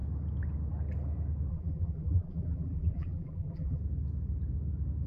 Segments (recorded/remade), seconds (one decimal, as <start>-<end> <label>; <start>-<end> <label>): 0.0-1.5 recorded; 1.5-3.8 remade; 3.8-5.1 recorded